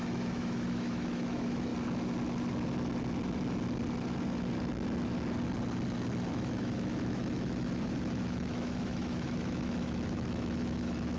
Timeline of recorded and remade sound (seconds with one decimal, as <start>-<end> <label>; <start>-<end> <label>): 0.0-1.7 remade; 1.7-6.3 recorded; 6.3-11.2 remade